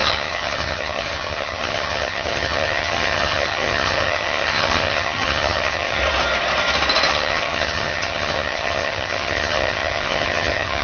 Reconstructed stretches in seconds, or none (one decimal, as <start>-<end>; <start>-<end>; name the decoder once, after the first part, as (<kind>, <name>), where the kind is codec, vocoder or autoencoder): 0.0-6.0 (vocoder, HiFi-GAN); 7.1-10.8